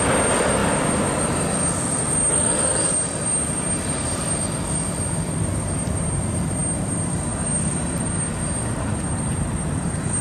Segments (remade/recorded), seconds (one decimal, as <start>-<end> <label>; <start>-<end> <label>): 0.0-2.3 recorded; 2.3-2.9 remade; 2.9-10.2 recorded